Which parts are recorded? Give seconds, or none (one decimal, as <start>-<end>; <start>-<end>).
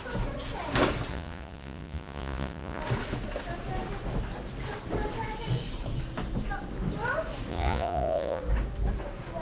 0.0-1.1; 2.8-7.5; 8.4-9.4